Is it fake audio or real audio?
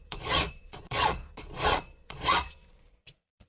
fake